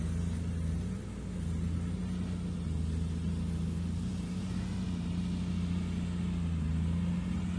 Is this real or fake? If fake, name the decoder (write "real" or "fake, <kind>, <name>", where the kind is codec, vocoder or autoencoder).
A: real